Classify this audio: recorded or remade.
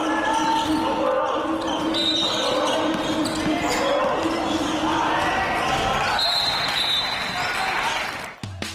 recorded